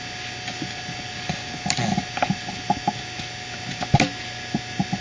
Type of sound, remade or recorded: recorded